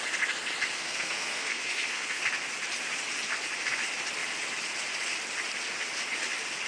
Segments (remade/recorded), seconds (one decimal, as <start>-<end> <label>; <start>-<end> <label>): 0.0-0.7 recorded; 0.7-2.2 remade; 2.2-6.7 recorded